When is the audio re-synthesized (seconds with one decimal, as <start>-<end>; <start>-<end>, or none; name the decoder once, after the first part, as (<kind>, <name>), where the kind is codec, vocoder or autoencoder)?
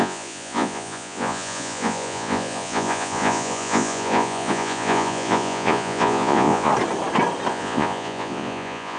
0.0-6.7 (vocoder, Vocos); 7.5-9.0